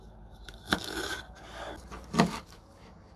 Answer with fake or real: fake